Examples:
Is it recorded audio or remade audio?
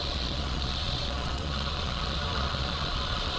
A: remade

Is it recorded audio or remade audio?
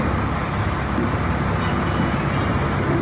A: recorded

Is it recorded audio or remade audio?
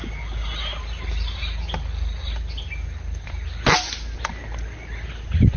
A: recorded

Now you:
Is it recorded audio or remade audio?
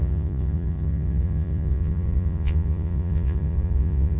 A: remade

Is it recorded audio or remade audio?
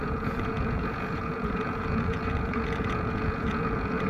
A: remade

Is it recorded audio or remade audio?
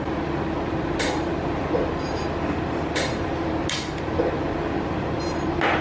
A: recorded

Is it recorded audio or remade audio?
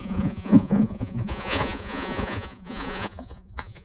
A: remade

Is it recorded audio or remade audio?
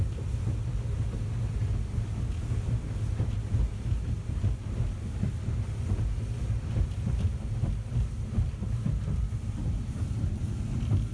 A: recorded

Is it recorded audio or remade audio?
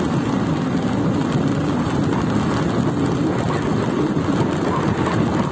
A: recorded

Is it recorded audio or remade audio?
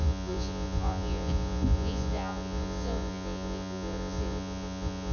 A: remade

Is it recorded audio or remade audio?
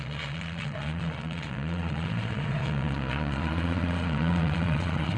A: remade